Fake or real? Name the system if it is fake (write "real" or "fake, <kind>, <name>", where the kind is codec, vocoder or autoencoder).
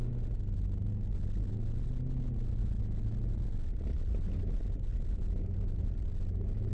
real